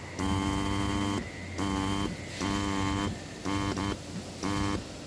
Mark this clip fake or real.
real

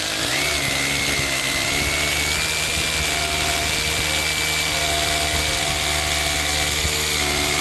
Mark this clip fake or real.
real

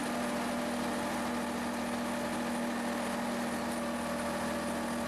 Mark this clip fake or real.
real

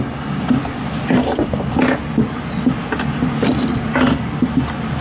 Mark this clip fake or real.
real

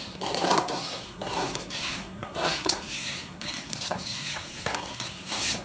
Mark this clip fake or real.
fake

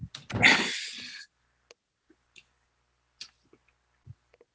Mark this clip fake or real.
real